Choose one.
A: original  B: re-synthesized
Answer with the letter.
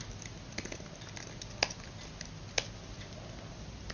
A